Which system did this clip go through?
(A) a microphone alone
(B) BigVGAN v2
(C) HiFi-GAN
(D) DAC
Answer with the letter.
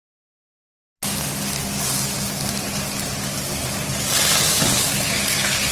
A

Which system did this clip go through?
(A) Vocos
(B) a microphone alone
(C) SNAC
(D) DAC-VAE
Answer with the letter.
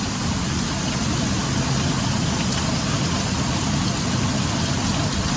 B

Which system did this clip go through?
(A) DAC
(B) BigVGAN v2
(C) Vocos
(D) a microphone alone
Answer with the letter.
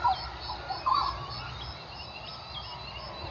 D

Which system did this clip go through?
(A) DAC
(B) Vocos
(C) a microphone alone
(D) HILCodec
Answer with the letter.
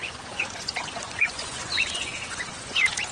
B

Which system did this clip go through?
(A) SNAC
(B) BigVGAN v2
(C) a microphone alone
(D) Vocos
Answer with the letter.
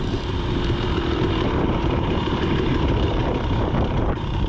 B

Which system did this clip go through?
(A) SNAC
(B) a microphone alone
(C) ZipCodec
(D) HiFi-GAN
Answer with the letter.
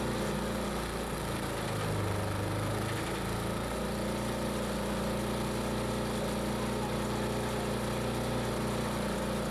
B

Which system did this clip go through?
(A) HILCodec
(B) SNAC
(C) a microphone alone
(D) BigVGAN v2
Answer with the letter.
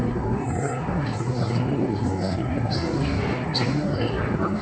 B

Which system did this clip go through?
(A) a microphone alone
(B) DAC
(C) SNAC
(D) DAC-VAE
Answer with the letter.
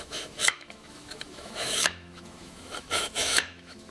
D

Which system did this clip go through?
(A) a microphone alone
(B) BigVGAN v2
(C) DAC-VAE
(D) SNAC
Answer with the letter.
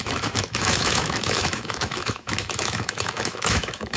C